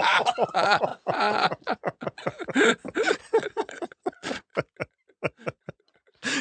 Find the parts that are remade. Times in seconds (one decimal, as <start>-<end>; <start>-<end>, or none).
0.0-2.3; 3.1-4.5; 5.6-6.4

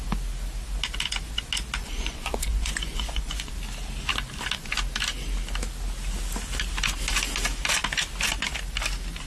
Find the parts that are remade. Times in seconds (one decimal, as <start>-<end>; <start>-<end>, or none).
1.8-3.5